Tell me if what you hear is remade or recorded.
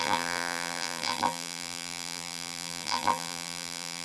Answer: remade